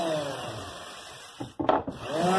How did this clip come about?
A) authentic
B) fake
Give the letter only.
A